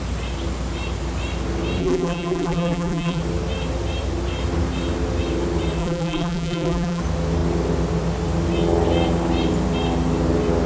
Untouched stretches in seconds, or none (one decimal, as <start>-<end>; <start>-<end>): 0.0-1.8; 3.2-5.8; 7.0-10.7